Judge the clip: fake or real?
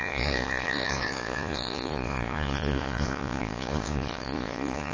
fake